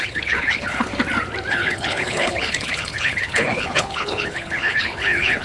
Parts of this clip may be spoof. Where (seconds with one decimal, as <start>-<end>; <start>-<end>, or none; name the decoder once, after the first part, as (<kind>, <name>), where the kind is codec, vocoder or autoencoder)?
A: 0.0-0.9 (codec, HILCodec); 1.5-5.4